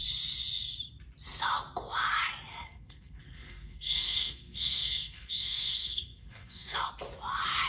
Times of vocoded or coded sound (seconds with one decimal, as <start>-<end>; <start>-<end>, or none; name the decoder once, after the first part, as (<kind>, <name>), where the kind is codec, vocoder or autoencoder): 2.5-6.9 (codec, SNAC)